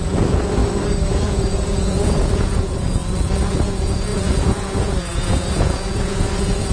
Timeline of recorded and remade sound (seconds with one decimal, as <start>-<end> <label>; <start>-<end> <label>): 0.0-0.6 remade; 0.6-1.1 recorded; 1.1-3.0 remade; 3.0-3.5 recorded; 3.5-6.7 remade